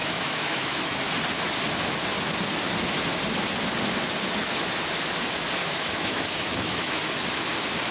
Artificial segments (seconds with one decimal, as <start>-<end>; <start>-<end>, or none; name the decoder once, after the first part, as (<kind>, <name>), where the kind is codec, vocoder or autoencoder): 0.0-1.0 (autoencoder, DAC-VAE); 5.6-7.0